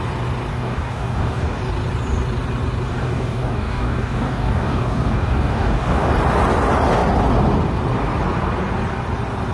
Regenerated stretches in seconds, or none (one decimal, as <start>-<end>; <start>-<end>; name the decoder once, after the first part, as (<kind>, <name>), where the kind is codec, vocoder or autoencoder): 0.5-1.6 (codec, DAC); 2.9-6.1